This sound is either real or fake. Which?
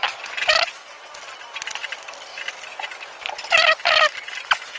real